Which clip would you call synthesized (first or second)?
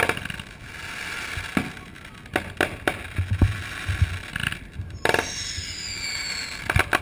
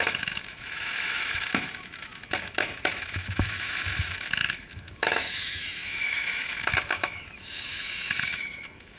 second